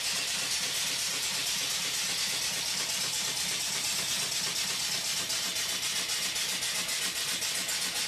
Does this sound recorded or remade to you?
recorded